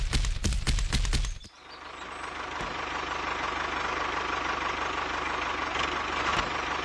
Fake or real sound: real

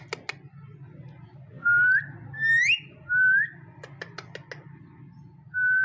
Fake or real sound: real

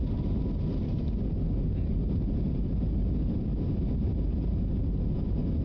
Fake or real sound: real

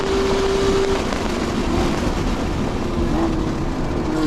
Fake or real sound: real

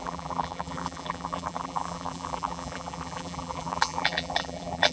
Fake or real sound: fake